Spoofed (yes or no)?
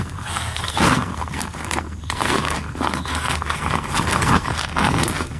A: yes